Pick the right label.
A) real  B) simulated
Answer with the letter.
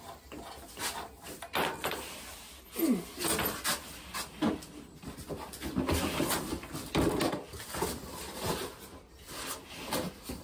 A